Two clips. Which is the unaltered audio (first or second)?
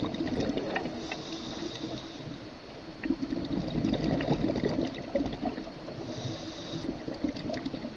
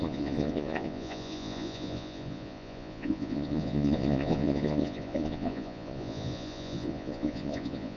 first